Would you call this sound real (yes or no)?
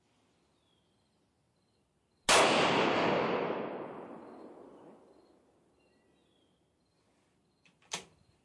yes